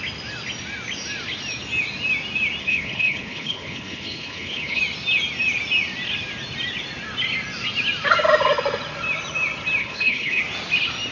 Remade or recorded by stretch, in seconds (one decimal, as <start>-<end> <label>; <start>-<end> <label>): 0.0-2.6 recorded; 2.6-4.8 remade; 4.8-9.8 recorded; 9.8-10.4 remade; 10.4-11.1 recorded